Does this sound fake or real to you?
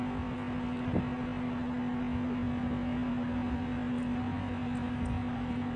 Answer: real